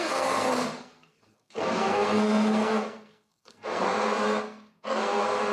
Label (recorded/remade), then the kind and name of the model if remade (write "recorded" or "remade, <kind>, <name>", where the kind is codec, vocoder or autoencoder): remade, codec, SNAC